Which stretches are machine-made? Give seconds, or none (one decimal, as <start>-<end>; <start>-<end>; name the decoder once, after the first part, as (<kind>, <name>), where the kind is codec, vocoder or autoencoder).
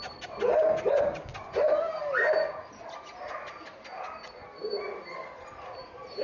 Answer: none